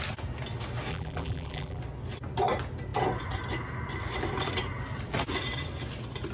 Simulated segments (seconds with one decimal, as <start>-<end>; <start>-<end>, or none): 0.9-1.8